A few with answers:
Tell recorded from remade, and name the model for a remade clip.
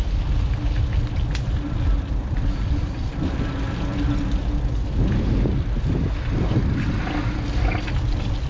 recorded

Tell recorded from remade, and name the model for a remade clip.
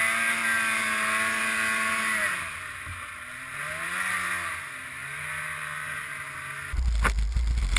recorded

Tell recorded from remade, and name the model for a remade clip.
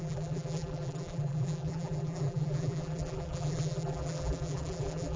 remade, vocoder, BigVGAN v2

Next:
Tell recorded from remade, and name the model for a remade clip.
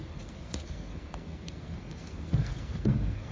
remade, codec, SNAC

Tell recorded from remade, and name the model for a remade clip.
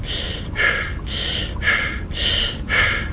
recorded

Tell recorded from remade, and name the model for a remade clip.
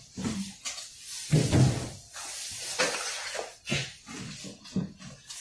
remade, vocoder, BigVGAN v2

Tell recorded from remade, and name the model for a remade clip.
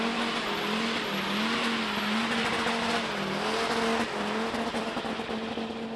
recorded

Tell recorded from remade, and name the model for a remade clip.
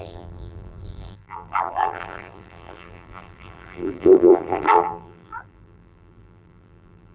remade, vocoder, BigVGAN v2